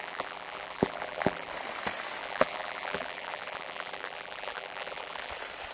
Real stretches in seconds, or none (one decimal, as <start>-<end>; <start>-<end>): 1.5-2.2; 5.3-5.7